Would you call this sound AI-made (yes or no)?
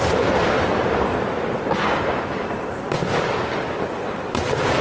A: no